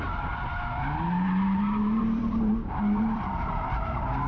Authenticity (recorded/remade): remade